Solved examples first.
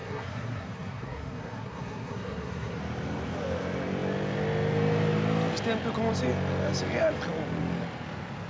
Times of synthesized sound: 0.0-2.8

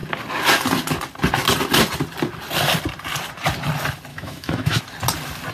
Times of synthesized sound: 4.1-4.8